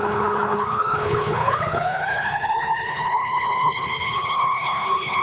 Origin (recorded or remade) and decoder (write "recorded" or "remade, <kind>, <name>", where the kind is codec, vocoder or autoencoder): remade, codec, HILCodec